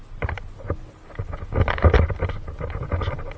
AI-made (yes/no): no